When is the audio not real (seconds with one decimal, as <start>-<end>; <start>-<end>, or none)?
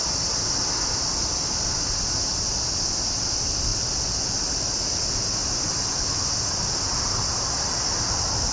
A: 5.4-6.4